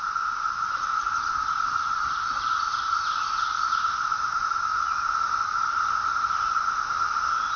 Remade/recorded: recorded